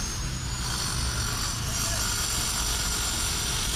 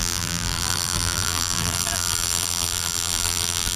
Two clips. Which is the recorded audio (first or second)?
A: first